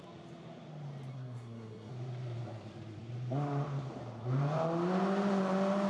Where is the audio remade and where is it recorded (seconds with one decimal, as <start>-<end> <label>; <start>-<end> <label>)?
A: 0.0-1.1 recorded; 1.1-1.9 remade; 1.9-5.9 recorded